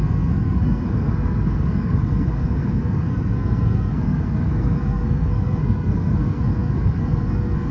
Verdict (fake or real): fake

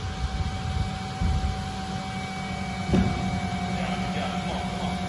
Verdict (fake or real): real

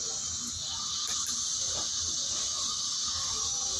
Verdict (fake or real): real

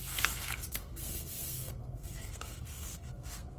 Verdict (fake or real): fake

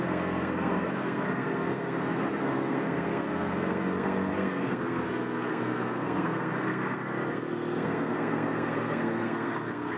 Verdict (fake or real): fake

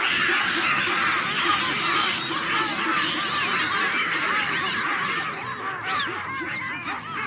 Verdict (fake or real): real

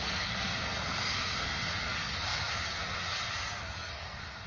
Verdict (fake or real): fake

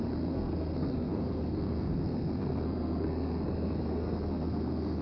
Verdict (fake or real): fake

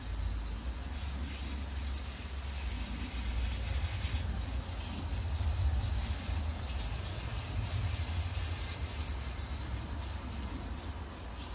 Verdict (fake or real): real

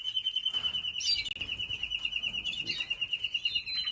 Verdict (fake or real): real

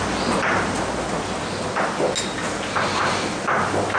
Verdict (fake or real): real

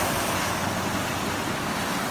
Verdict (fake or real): real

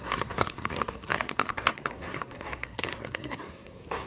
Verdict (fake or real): fake